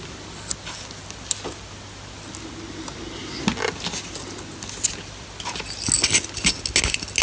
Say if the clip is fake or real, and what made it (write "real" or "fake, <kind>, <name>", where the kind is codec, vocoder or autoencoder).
real